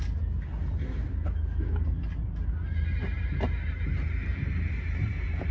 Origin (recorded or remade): recorded